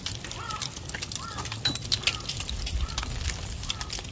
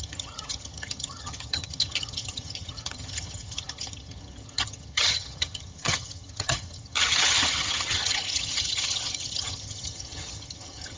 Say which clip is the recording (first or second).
first